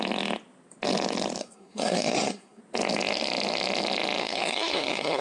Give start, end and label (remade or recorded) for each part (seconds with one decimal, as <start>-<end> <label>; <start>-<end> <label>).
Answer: 0.0-1.4 recorded; 1.4-2.6 remade; 2.6-4.2 recorded; 4.2-5.2 remade